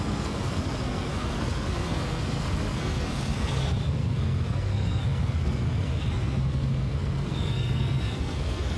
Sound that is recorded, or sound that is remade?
remade